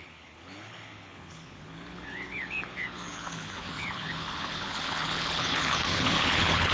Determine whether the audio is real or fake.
fake